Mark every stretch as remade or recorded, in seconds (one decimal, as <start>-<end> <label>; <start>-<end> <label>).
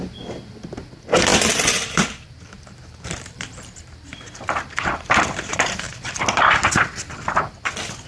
0.0-1.3 recorded; 1.3-6.2 remade; 6.2-8.1 recorded